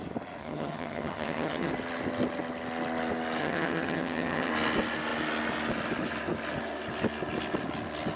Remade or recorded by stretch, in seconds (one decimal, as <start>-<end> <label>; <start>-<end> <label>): 0.0-0.4 recorded; 0.4-1.7 remade; 1.7-3.4 recorded; 3.4-4.5 remade; 4.5-8.2 recorded